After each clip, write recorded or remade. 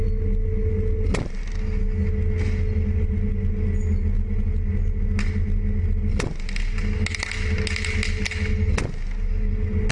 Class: recorded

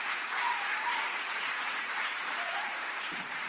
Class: remade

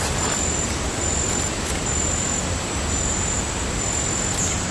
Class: recorded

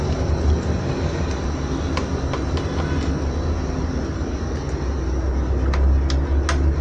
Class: recorded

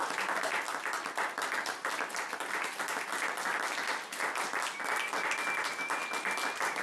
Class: recorded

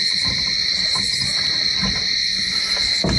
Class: recorded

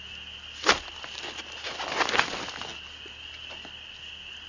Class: recorded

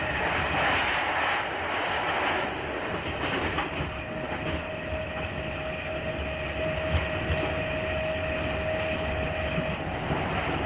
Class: recorded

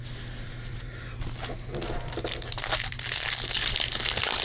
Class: recorded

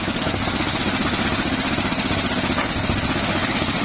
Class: remade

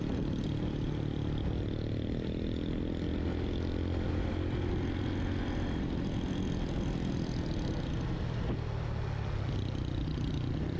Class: recorded